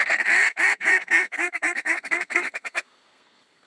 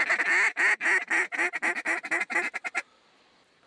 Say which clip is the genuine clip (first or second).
second